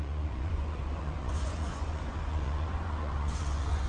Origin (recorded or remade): remade